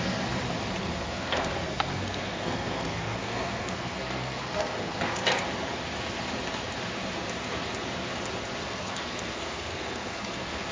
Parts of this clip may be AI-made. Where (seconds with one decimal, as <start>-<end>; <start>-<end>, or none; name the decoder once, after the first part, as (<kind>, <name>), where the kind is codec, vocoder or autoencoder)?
0.8-5.4 (codec, SNAC); 8.6-10.7